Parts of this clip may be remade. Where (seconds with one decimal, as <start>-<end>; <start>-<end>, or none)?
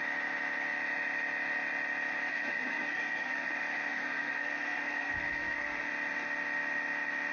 2.3-3.5; 3.9-5.9